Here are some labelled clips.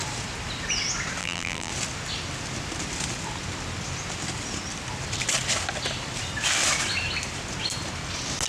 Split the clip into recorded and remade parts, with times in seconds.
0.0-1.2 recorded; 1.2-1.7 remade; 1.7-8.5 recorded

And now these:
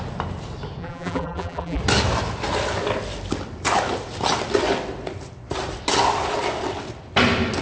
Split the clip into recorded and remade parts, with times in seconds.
0.0-0.8 recorded; 0.8-1.8 remade; 1.8-7.6 recorded